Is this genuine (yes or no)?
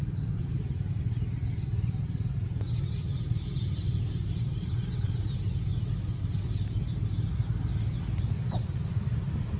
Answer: yes